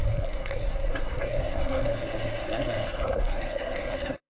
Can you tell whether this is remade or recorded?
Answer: remade